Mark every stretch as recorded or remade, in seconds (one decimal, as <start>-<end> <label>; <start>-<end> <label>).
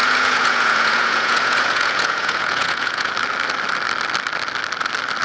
0.0-3.1 remade; 3.1-5.2 recorded